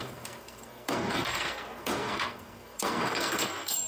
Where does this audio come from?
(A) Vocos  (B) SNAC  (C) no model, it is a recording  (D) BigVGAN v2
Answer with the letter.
B